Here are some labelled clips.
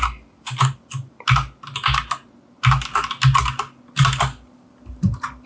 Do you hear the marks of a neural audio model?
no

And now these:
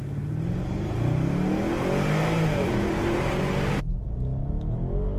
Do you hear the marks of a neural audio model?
no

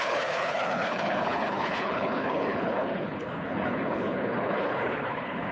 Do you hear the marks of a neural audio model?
yes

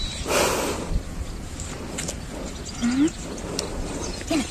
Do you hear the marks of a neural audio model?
no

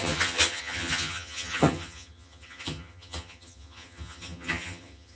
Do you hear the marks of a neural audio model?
yes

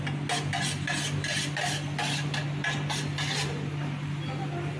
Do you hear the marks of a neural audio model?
no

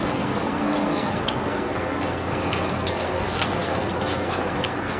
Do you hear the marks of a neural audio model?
yes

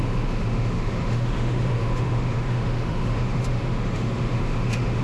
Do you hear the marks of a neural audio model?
yes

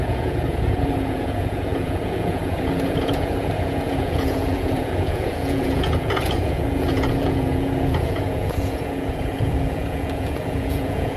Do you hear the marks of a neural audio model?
yes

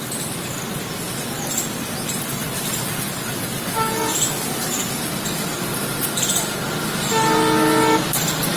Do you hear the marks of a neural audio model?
no